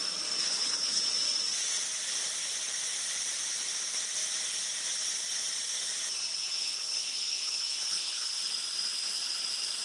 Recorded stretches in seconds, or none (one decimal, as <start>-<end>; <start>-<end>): 0.0-0.4; 1.0-6.4; 8.4-9.8